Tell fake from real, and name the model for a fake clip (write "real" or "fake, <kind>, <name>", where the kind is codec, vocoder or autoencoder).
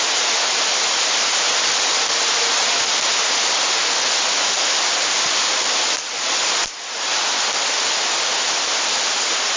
real